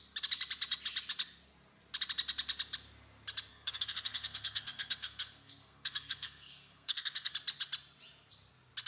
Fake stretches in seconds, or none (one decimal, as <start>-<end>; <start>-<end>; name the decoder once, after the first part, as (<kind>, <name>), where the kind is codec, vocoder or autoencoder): 3.5-7.3 (codec, SNAC)